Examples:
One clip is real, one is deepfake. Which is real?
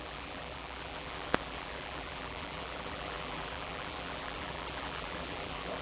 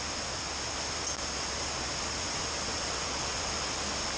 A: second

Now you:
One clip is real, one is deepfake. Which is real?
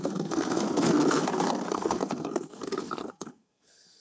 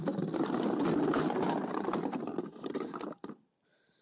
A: second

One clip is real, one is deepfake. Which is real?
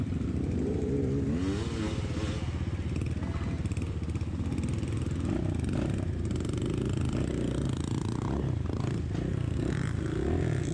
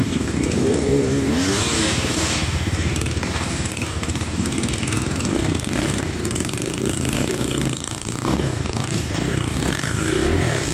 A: first